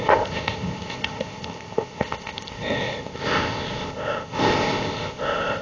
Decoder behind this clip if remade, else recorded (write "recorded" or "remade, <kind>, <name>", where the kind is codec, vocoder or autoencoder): remade, codec, ZipCodec